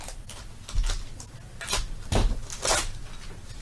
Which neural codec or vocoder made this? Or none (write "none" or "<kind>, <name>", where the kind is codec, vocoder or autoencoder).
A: none